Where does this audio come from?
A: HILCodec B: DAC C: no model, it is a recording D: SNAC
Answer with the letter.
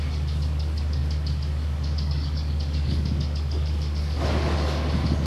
B